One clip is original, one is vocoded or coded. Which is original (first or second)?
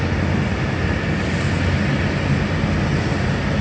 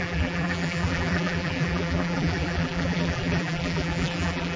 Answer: first